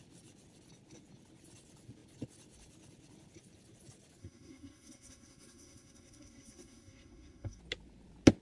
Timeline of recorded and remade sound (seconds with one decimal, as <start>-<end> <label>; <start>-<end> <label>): 0.0-4.2 recorded; 4.2-7.6 remade; 7.6-8.4 recorded